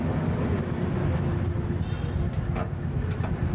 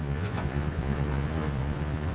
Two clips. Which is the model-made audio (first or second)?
second